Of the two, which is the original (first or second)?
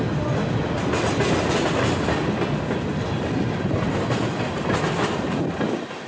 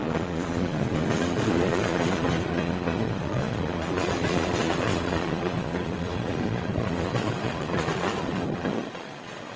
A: first